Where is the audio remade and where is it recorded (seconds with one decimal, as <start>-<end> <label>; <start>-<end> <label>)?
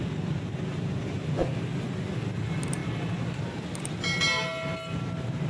0.0-5.5 recorded